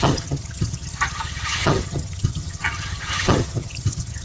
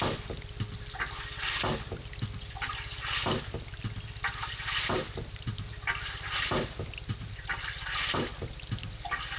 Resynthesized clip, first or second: first